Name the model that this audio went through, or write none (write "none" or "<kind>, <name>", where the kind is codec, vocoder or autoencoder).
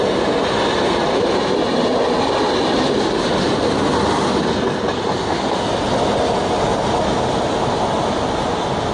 none